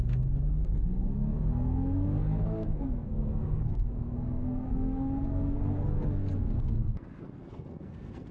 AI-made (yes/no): yes